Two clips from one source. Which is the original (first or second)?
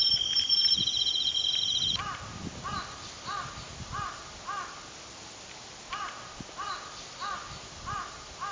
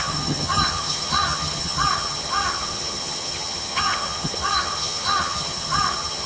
first